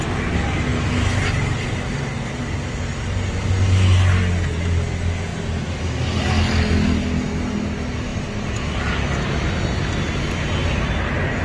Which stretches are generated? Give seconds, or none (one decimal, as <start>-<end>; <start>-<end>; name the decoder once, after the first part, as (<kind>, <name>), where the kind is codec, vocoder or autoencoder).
none